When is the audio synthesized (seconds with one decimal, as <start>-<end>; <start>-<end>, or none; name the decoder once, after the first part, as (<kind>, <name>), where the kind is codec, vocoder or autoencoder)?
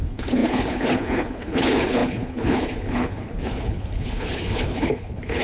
0.0-5.4 (codec, HILCodec)